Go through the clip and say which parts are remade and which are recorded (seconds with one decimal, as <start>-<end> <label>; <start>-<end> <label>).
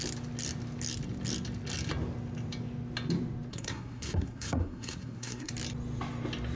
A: 0.0-3.5 recorded; 3.5-5.5 remade; 5.5-6.6 recorded